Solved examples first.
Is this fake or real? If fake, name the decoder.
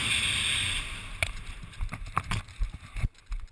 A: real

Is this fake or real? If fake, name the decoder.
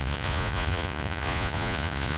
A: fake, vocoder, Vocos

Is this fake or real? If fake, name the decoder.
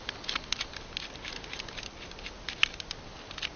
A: real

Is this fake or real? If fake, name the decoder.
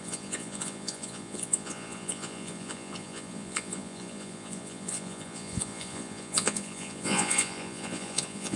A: fake, vocoder, Vocos